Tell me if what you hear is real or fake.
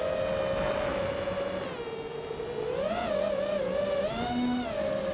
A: real